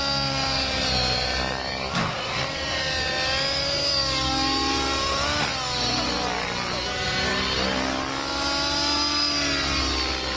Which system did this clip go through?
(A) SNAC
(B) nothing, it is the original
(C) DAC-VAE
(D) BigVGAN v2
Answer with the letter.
B